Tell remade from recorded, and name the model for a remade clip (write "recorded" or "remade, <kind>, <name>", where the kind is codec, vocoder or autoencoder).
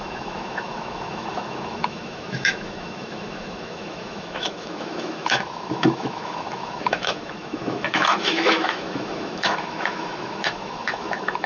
remade, autoencoder, DAC-VAE